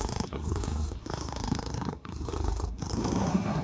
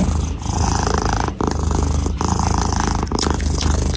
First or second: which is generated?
first